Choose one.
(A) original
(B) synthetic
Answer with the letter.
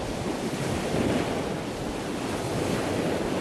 A